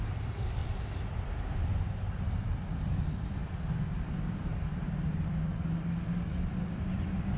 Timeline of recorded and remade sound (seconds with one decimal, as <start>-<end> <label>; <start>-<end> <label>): 0.0-3.4 remade; 3.4-6.6 recorded; 6.6-7.4 remade